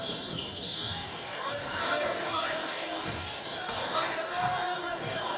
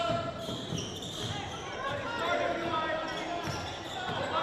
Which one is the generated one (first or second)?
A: first